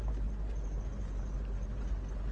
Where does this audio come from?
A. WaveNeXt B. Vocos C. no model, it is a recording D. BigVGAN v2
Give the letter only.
C